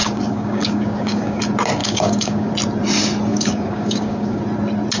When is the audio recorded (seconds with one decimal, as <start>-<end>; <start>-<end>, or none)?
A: 1.4-1.8; 2.5-3.3; 4.4-5.0